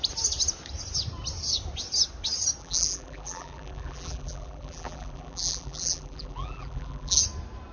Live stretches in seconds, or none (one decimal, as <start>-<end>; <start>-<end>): 0.0-2.6; 7.2-7.7